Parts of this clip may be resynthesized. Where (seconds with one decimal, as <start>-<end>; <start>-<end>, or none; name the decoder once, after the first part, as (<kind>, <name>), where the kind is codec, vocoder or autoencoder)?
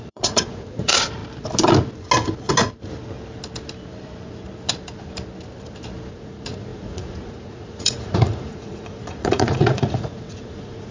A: 0.0-1.2 (vocoder, Vocos); 6.1-10.9